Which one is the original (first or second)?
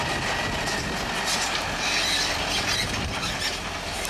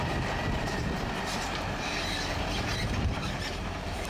first